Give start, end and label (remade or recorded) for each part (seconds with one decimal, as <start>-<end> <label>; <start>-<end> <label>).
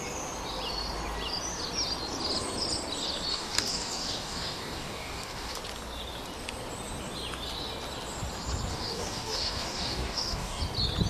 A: 0.0-3.3 recorded; 3.3-5.6 remade; 5.6-8.7 recorded; 8.7-10.6 remade; 10.6-11.1 recorded